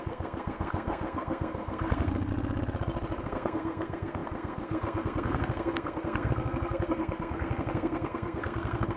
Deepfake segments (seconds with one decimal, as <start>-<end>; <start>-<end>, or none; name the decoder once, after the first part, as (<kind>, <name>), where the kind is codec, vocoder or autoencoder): 0.0-2.3 (codec, SNAC); 3.2-9.0